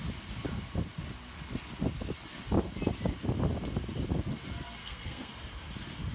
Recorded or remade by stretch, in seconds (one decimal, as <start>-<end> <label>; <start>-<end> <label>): 0.0-4.8 recorded; 4.8-5.3 remade; 5.3-6.1 recorded